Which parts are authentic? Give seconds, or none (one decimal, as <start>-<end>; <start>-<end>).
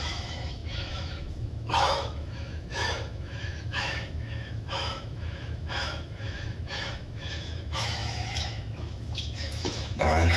none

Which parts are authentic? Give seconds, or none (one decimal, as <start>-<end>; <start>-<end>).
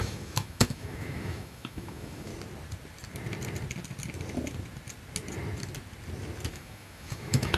2.3-6.5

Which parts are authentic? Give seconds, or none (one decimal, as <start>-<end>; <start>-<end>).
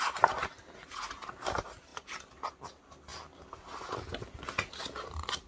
0.0-5.5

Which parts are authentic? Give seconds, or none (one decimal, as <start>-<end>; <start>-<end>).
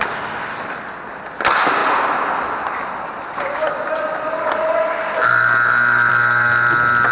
0.0-7.1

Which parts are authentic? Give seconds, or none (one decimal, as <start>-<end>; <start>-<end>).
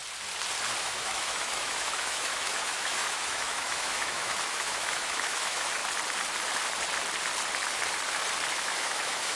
0.0-0.8; 5.8-8.5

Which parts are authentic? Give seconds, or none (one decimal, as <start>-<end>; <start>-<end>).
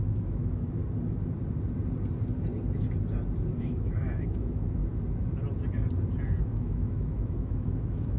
0.8-3.6; 4.8-6.4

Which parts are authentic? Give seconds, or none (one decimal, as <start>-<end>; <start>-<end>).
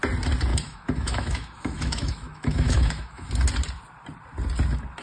0.0-0.5; 3.3-5.0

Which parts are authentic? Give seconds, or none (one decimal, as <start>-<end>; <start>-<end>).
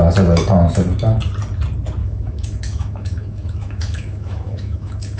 0.0-2.0